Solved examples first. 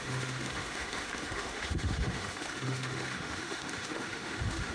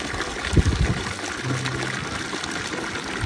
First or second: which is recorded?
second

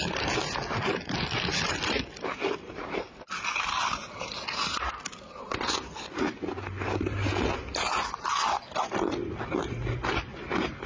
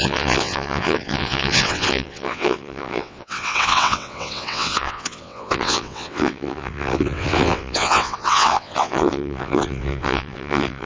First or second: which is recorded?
first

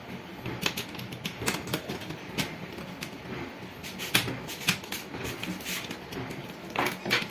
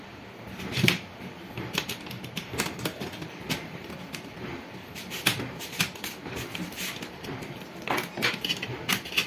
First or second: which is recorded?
first